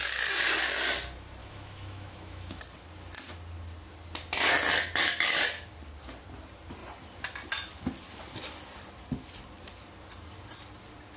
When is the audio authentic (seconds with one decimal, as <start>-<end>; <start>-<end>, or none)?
0.0-1.4; 2.6-11.2